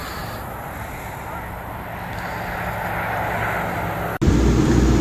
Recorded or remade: recorded